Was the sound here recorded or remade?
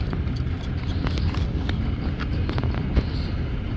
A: recorded